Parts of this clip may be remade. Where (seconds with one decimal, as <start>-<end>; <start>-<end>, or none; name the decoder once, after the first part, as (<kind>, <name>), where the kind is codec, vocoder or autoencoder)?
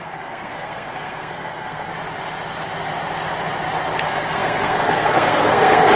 0.0-1.9 (codec, SNAC); 4.0-6.0